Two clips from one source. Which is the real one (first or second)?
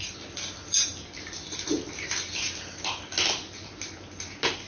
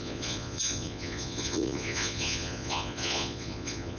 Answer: first